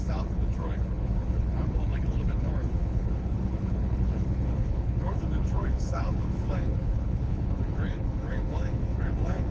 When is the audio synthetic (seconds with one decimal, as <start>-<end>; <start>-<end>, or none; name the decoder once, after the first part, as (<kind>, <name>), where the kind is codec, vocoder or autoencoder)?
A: 0.0-9.5 (codec, HILCodec)